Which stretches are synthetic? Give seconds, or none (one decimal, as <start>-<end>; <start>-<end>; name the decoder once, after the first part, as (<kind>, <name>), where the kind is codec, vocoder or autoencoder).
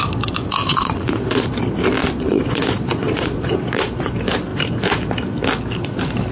0.6-1.6 (vocoder, Vocos); 2.0-4.1